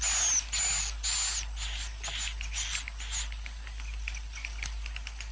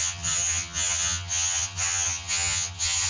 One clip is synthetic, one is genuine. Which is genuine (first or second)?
first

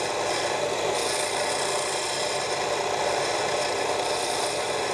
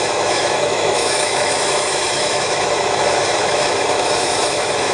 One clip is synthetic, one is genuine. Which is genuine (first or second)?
first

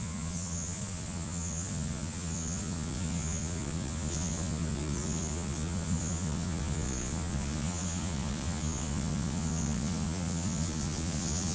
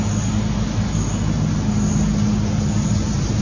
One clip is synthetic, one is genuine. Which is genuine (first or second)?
second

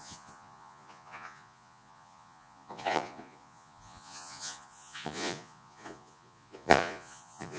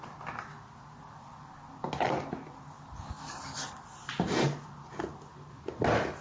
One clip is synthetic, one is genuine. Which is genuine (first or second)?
second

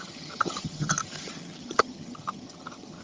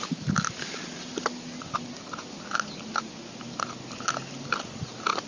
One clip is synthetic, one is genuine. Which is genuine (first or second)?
second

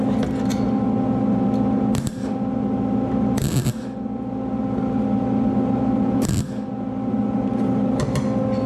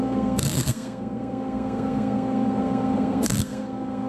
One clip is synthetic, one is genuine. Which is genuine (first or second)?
first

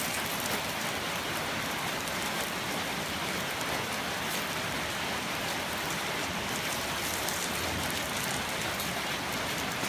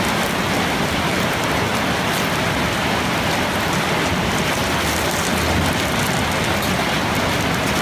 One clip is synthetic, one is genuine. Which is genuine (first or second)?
second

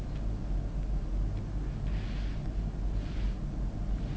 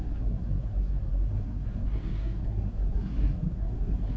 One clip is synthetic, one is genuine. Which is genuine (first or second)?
first